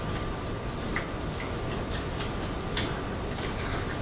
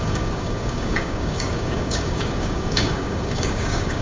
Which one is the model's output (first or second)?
second